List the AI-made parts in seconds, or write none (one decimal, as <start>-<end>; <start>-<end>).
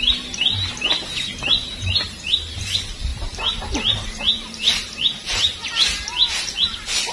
1.3-2.2; 3.1-5.6